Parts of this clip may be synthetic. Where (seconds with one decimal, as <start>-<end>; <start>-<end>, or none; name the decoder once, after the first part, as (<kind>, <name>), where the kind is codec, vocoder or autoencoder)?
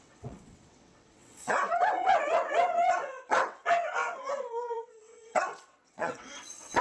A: 0.0-6.8 (vocoder, WaveNeXt)